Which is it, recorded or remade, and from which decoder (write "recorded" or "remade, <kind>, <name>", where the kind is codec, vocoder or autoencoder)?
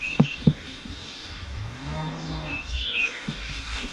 remade, codec, DAC